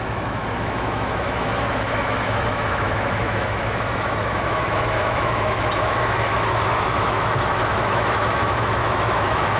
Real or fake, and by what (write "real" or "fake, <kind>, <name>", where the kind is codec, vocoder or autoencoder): fake, autoencoder, DAC-VAE